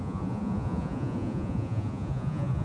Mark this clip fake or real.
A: fake